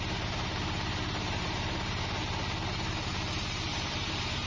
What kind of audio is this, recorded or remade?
remade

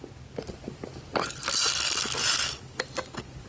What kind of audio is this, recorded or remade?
recorded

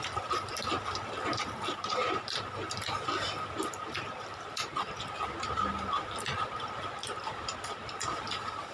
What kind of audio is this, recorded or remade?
remade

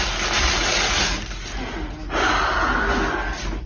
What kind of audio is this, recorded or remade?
recorded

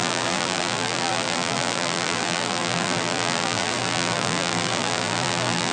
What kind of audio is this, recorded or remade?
remade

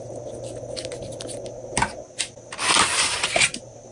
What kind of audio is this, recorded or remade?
recorded